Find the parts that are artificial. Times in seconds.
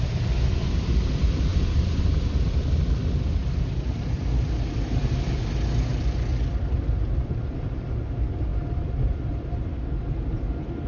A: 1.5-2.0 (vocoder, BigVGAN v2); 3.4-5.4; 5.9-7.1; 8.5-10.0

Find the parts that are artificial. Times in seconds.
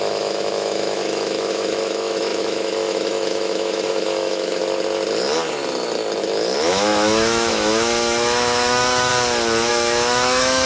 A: 0.0-4.6 (autoencoder, DAC-VAE); 6.7-9.1; 9.7-10.7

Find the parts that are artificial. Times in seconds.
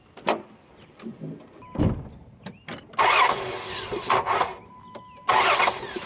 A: 0.0-1.6 (vocoder, BigVGAN v2); 5.3-6.1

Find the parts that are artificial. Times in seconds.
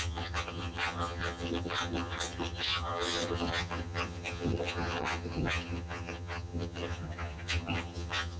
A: 0.0-8.4 (vocoder, HiFi-GAN)